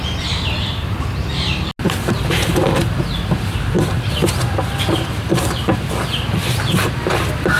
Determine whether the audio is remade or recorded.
recorded